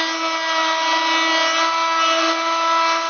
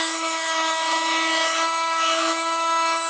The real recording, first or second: first